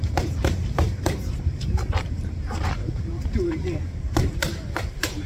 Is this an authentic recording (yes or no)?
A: no